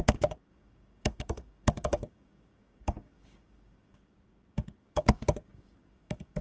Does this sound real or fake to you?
fake